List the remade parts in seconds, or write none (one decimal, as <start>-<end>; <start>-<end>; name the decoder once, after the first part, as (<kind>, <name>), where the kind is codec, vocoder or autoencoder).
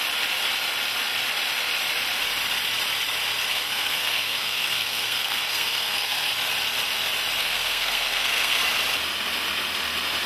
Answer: 3.5-6.3 (codec, SNAC); 7.4-8.6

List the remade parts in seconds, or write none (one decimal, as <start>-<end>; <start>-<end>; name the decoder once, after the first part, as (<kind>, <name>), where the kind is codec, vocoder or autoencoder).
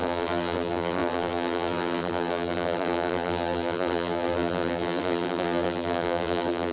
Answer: 0.0-6.7 (vocoder, BigVGAN v2)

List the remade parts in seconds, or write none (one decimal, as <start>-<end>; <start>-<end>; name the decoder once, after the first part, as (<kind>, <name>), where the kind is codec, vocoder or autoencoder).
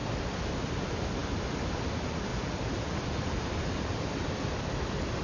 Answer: 0.0-0.6 (vocoder, BigVGAN v2); 2.3-3.8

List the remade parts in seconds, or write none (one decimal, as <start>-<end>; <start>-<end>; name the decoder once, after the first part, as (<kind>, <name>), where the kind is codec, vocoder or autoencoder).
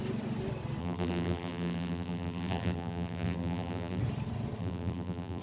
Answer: 0.8-4.0 (vocoder, BigVGAN v2); 4.6-5.4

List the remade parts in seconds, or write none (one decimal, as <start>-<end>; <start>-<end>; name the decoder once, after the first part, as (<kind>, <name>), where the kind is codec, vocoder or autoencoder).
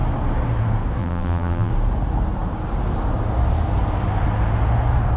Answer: 1.0-1.7 (vocoder, BigVGAN v2)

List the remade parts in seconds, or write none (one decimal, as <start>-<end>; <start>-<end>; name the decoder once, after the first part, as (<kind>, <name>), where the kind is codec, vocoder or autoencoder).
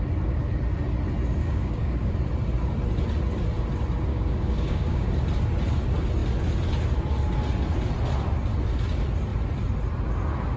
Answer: 1.4-2.1 (codec, DAC); 4.1-5.1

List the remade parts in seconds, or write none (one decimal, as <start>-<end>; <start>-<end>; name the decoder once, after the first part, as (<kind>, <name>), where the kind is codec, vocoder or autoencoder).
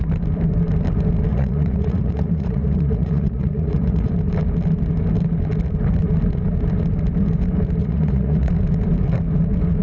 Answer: 1.3-4.1 (vocoder, Vocos); 7.8-8.5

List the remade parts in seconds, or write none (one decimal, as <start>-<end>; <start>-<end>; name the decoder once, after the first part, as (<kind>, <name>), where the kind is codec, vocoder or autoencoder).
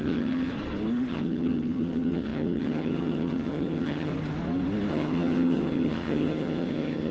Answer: 0.0-0.5 (vocoder, HiFi-GAN); 1.1-4.1; 4.9-7.1